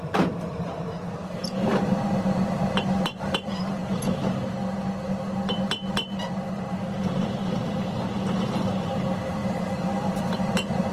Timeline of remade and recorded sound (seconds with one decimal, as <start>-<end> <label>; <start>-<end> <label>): 0.0-3.8 remade; 3.8-8.4 recorded; 8.4-10.9 remade